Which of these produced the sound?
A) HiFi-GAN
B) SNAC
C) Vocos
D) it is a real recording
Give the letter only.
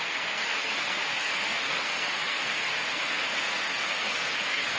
B